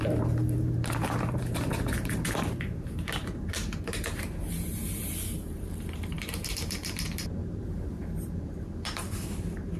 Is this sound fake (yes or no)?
yes